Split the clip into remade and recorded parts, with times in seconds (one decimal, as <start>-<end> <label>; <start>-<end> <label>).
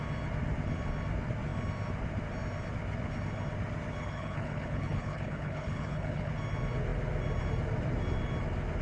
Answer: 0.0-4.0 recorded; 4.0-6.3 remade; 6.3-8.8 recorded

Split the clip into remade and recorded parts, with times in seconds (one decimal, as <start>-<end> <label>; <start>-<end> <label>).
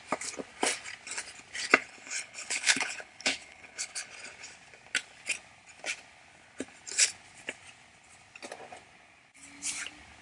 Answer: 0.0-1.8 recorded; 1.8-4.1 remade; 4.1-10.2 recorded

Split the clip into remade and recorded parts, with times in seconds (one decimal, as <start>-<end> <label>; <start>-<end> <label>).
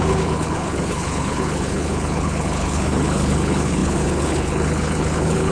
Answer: 0.0-5.5 remade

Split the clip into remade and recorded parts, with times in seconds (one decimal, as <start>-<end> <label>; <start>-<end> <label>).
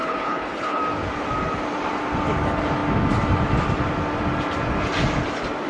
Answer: 0.0-0.8 remade; 0.8-5.7 recorded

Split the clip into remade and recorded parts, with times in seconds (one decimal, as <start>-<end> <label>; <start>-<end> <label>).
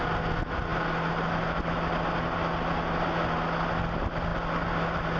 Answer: 0.0-5.2 recorded